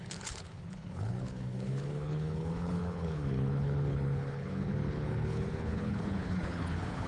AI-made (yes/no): yes